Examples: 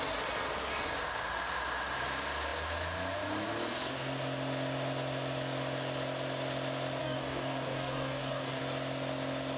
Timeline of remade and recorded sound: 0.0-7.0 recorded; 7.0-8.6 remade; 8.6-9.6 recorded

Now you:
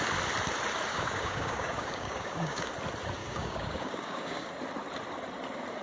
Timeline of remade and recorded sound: 0.0-0.9 recorded; 0.9-2.7 remade; 2.7-3.2 recorded; 3.2-4.5 remade; 4.5-5.8 recorded

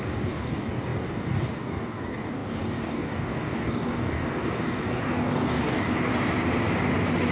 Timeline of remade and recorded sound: 0.0-6.1 remade; 6.1-7.3 recorded

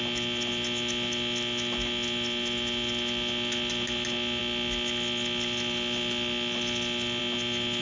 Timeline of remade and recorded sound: 0.0-7.8 recorded

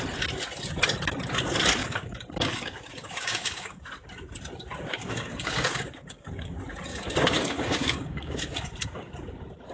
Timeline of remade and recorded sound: 0.0-1.8 recorded; 1.8-3.8 remade; 3.8-4.9 recorded; 4.9-6.5 remade; 6.5-6.9 recorded; 6.9-9.1 remade; 9.1-9.7 recorded

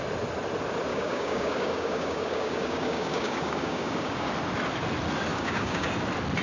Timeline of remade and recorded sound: 0.0-0.9 recorded; 0.9-4.3 remade; 4.3-5.3 recorded; 5.3-5.9 remade; 5.9-6.4 recorded